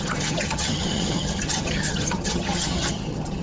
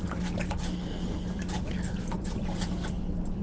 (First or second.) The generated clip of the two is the first